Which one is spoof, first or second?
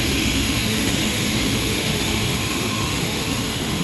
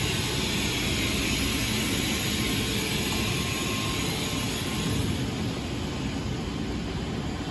first